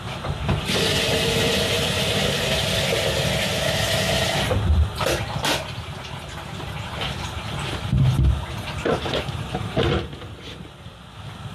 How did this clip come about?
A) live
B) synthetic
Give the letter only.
A